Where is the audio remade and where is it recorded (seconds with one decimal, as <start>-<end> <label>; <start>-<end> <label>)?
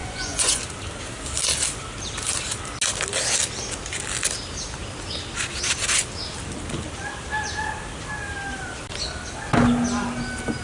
0.0-0.6 remade; 0.6-10.6 recorded